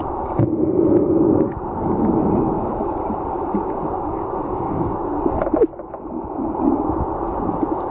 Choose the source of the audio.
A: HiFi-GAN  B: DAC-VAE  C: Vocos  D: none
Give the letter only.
D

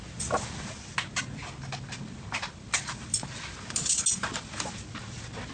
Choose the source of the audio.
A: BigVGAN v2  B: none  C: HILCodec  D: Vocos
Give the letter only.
B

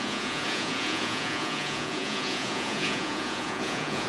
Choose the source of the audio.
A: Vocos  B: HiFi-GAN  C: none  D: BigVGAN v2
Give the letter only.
A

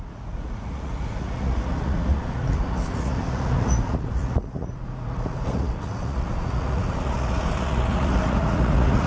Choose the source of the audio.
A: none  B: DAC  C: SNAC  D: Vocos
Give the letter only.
D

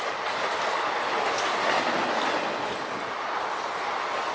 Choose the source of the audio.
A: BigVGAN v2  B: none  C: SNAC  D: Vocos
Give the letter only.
B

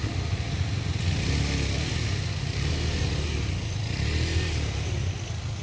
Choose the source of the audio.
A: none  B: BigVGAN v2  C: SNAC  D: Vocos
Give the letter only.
A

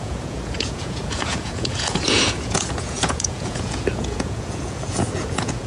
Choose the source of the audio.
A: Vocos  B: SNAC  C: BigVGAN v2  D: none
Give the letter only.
A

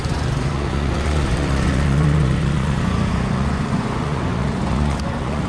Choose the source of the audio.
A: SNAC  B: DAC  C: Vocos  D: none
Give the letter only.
C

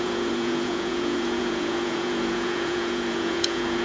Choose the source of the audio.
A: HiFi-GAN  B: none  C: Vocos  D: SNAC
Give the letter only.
C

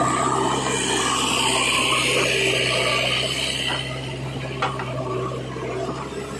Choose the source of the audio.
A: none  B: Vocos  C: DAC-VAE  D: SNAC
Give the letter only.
A